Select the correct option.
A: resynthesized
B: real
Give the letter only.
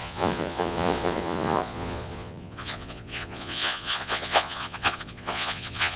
A